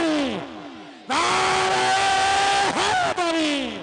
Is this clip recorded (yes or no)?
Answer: yes